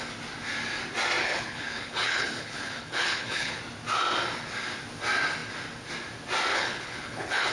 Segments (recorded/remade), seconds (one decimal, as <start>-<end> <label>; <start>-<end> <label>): 0.0-1.2 recorded; 1.2-3.6 remade; 3.6-6.5 recorded; 6.5-7.5 remade